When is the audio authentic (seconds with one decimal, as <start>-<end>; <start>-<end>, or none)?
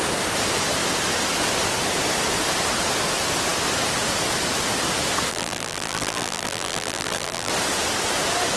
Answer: 0.0-5.3; 7.5-8.6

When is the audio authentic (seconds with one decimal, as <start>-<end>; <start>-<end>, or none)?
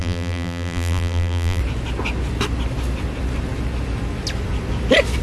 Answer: 1.6-5.2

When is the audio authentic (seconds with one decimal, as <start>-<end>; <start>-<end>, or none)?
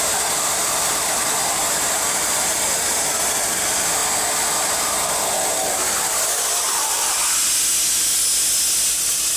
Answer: 4.0-4.6; 7.2-8.9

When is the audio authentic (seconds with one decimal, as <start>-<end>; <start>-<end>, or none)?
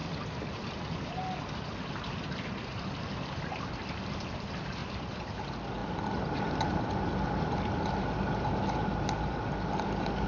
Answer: 0.0-5.8; 6.8-10.3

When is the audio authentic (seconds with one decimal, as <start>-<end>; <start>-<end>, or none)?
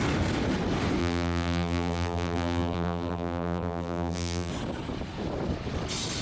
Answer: 0.0-1.0; 4.5-6.2